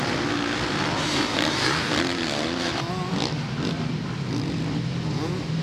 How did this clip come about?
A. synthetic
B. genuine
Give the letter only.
B